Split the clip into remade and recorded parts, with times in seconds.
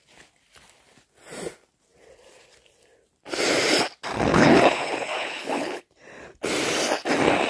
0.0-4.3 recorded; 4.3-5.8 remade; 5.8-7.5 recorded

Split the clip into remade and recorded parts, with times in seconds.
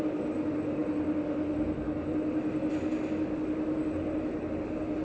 0.0-5.0 recorded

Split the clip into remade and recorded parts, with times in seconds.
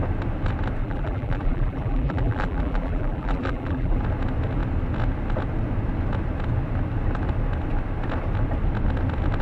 0.0-0.8 recorded; 0.8-4.0 remade; 4.0-9.4 recorded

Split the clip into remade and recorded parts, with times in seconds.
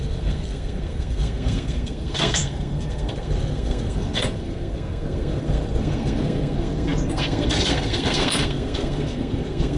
0.0-9.8 remade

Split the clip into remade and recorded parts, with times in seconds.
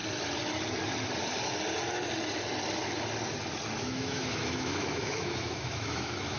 0.0-3.8 recorded; 3.8-6.4 remade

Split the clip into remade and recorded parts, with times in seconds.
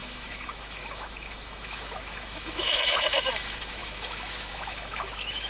0.0-5.5 remade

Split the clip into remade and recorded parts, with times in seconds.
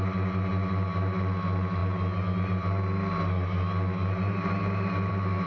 0.0-5.5 recorded